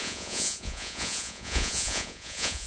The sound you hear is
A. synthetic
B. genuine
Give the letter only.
A